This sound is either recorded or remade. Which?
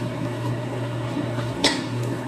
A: remade